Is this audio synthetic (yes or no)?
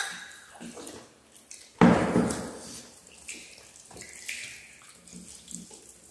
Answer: no